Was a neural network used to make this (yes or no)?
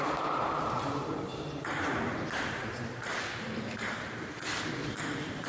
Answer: yes